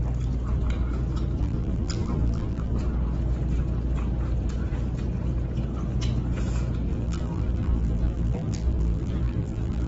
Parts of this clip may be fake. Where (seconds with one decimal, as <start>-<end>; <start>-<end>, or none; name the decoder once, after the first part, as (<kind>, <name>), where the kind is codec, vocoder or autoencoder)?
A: 1.4-2.7 (vocoder, BigVGAN v2); 6.9-9.9